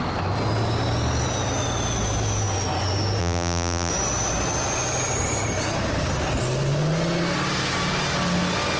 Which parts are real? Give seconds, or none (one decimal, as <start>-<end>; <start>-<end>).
0.0-3.2; 3.9-8.8